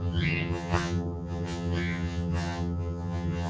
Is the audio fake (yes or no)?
yes